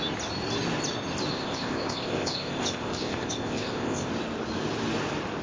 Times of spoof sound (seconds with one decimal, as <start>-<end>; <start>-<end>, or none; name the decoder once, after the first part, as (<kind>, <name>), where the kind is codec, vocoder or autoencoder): 1.3-4.1 (codec, ZipCodec)